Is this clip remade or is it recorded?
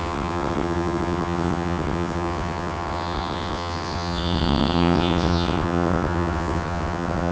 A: remade